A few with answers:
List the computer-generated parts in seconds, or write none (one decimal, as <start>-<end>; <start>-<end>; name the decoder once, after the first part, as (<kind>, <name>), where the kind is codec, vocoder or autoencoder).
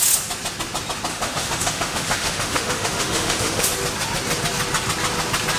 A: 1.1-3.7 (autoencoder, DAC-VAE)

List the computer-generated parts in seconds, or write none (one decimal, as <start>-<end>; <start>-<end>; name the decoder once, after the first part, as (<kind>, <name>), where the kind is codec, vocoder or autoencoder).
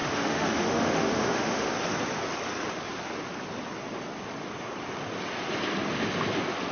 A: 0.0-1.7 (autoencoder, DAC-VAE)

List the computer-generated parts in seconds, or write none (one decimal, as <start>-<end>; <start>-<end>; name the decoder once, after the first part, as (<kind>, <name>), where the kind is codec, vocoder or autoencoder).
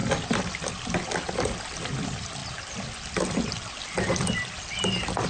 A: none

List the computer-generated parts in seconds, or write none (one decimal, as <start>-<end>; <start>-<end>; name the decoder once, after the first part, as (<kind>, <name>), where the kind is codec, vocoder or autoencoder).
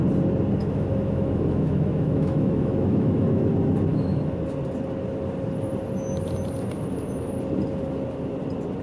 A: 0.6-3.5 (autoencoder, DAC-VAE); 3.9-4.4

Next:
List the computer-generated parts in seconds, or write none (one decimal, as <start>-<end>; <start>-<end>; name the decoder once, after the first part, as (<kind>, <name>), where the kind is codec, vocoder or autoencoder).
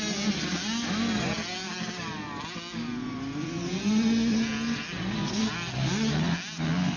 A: none